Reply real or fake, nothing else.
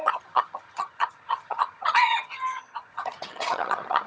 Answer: fake